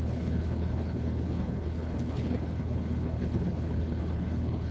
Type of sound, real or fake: fake